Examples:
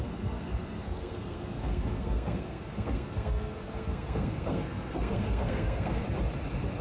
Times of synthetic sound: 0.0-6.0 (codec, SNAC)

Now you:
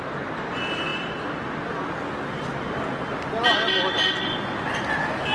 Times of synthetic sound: none

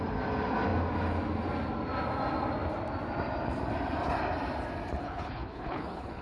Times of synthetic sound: 5.0-6.2 (codec, HILCodec)

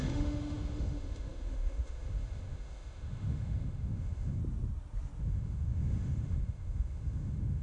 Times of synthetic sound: 0.0-4.4 (autoencoder, DAC-VAE); 5.2-7.6

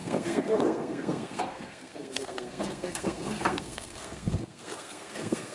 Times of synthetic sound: 0.0-5.5 (codec, SNAC)

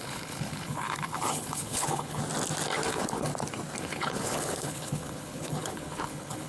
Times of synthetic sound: 0.0-2.2 (codec, HILCodec); 2.9-3.3; 3.8-6.5